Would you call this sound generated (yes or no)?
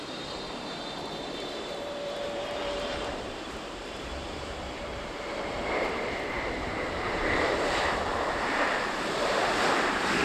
yes